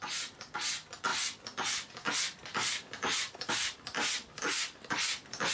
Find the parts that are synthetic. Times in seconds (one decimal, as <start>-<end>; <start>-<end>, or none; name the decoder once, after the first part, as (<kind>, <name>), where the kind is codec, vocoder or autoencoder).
none